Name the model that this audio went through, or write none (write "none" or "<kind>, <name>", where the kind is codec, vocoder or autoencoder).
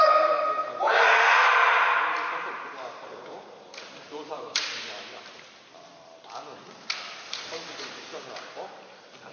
vocoder, BigVGAN v2